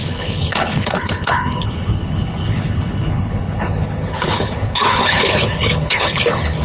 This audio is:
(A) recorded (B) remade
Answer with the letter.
B